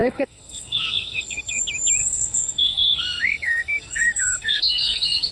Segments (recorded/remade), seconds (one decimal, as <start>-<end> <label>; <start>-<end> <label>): 0.0-1.6 remade; 1.6-2.0 recorded; 2.0-5.3 remade